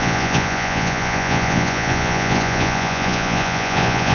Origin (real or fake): fake